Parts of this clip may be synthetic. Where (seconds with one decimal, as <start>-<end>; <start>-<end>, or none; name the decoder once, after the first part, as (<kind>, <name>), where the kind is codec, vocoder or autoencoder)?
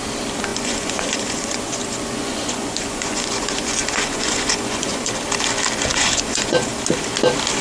0.5-5.1 (vocoder, Vocos); 5.9-6.7